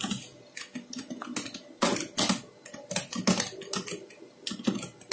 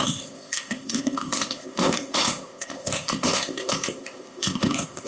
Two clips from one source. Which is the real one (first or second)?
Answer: first